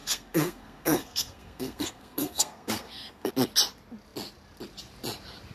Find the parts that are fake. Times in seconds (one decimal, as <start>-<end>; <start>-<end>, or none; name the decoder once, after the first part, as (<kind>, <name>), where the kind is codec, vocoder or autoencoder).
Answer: 0.0-3.3 (codec, SNAC)